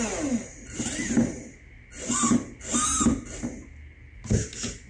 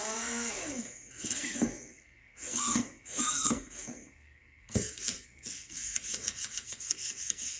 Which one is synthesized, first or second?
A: second